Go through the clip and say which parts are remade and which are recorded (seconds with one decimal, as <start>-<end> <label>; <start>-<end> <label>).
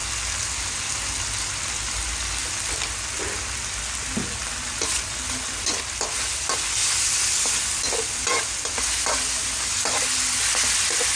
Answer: 0.0-11.2 recorded